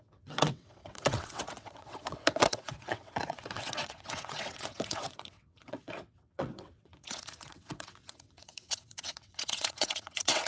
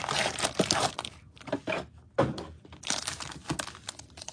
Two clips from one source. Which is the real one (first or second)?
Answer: second